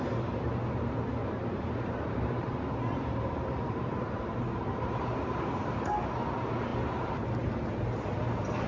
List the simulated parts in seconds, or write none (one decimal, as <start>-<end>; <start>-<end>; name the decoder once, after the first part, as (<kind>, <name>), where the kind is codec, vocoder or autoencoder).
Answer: 1.2-5.8 (vocoder, BigVGAN v2)